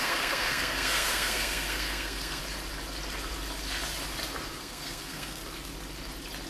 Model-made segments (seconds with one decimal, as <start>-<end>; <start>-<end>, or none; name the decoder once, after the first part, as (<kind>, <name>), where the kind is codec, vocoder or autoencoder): 0.0-2.4 (codec, SNAC); 4.6-5.4